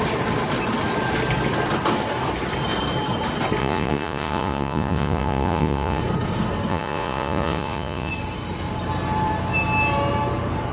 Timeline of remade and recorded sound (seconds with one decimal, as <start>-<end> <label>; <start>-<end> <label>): 0.0-3.6 recorded; 3.6-6.0 remade; 6.0-6.7 recorded; 6.7-8.1 remade; 8.1-10.7 recorded